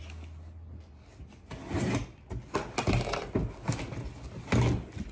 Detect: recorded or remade recorded